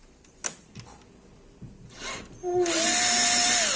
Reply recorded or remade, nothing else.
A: recorded